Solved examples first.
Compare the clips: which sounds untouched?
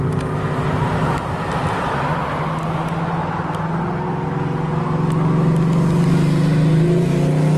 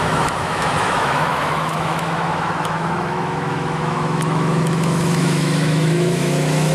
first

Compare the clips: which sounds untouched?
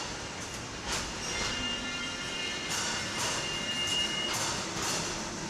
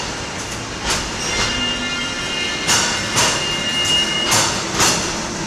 second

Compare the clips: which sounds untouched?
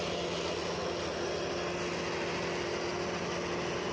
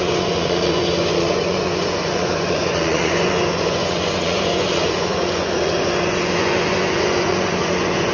first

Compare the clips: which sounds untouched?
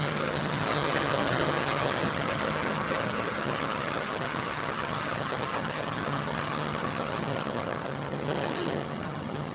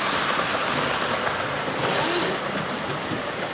second